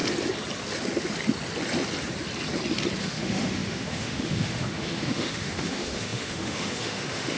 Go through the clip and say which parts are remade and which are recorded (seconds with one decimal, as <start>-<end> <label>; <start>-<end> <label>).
0.0-3.0 recorded; 3.0-7.4 remade